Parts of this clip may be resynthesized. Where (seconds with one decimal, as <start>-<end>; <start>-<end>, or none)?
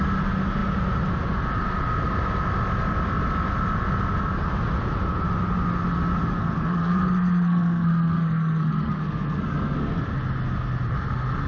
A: 6.4-10.0